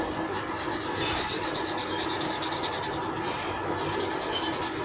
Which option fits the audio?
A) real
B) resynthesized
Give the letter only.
A